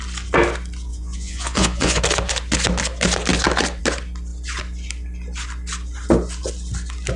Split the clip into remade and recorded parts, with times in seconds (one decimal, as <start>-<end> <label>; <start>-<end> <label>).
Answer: 0.0-0.9 recorded; 0.9-2.0 remade; 2.0-7.2 recorded